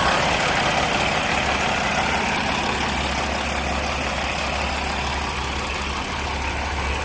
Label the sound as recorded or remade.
recorded